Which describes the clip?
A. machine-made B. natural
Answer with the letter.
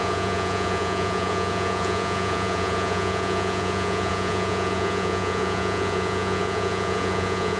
A